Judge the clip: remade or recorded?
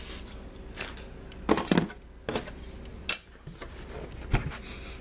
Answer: recorded